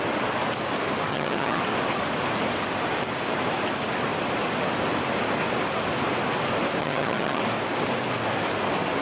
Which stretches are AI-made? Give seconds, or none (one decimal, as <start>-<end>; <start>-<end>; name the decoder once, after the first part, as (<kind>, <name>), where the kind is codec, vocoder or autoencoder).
1.1-1.6 (vocoder, HiFi-GAN); 6.8-7.4